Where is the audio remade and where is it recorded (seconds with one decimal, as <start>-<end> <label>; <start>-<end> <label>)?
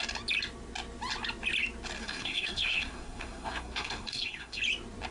0.0-2.0 recorded; 2.0-4.6 remade; 4.6-5.1 recorded